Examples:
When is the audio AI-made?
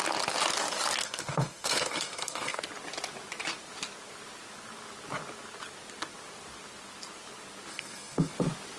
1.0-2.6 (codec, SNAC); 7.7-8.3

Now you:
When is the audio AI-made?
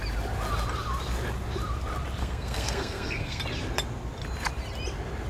2.2-3.4 (codec, SNAC)